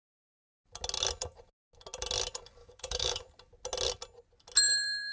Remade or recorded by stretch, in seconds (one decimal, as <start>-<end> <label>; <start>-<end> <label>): 0.0-2.6 recorded; 2.6-3.2 remade; 3.2-5.1 recorded